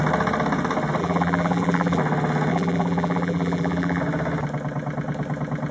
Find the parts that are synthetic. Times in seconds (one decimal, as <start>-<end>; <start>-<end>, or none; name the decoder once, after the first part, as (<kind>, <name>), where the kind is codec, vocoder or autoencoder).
1.0-2.0 (vocoder, BigVGAN v2); 2.5-4.0